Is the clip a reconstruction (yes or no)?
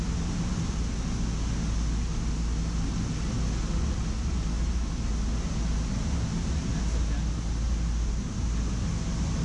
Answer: no